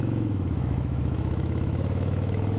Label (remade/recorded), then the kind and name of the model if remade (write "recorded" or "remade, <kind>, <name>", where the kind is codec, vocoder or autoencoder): remade, autoencoder, DAC-VAE